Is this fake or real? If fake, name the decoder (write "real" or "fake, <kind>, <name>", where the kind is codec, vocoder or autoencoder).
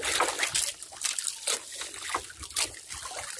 real